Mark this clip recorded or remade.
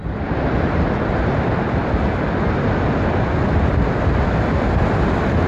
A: recorded